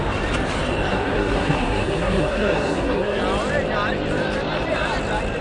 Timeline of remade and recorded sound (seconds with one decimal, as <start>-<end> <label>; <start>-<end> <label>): 0.0-0.9 recorded; 0.9-3.2 remade; 3.2-5.4 recorded